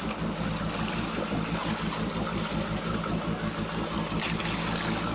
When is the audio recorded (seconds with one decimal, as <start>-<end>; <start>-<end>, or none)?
0.0-5.1